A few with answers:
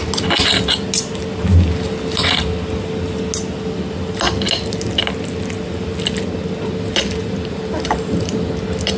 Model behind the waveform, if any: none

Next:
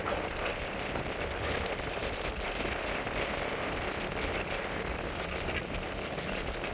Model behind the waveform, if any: none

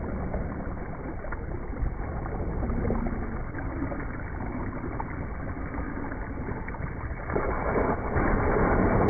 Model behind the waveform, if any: none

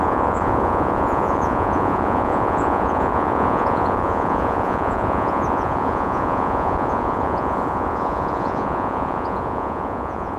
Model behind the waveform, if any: vocoder, Vocos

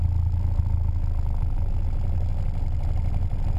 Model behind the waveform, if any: none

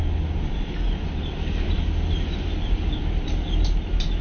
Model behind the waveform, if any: none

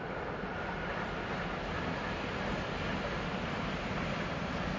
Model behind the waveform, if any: none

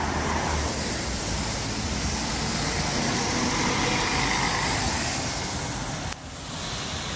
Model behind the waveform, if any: none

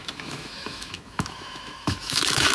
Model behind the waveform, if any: autoencoder, DAC-VAE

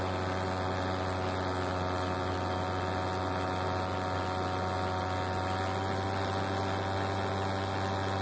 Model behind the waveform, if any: none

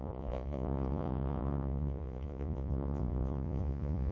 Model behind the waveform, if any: vocoder, Vocos